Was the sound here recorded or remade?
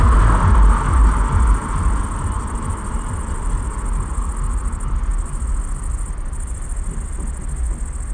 recorded